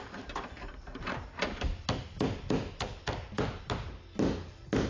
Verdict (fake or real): real